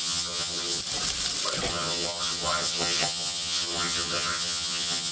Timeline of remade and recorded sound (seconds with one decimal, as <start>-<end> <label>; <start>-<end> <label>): 0.0-0.8 remade; 0.8-1.7 recorded; 1.7-5.1 remade